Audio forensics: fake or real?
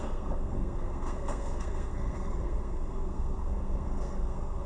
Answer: fake